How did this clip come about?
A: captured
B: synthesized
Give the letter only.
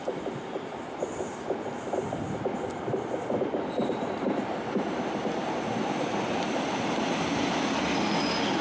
A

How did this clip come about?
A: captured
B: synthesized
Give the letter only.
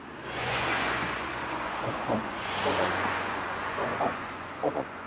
B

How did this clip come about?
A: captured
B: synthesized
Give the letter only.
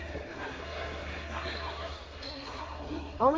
B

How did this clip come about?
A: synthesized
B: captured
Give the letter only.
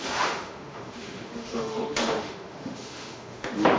A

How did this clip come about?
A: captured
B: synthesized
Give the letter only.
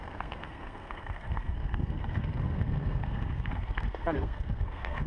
B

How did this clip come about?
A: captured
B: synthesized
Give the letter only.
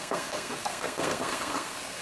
B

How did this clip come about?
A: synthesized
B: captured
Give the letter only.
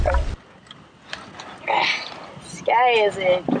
B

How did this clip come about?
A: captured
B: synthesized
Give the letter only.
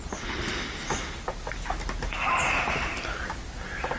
A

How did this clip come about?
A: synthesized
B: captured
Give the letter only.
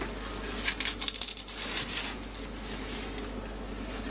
B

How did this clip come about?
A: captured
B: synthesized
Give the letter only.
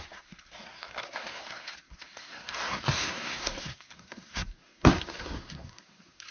B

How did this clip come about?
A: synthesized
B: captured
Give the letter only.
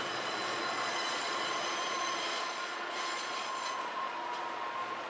A